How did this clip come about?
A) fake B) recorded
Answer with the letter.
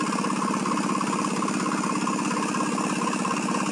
B